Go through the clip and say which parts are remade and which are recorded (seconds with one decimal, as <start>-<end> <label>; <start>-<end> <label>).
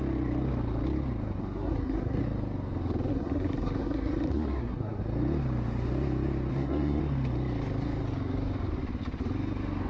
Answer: 0.0-1.4 recorded; 1.4-2.2 remade; 2.2-3.1 recorded; 3.1-5.0 remade; 5.0-6.5 recorded; 6.5-7.0 remade; 7.0-9.9 recorded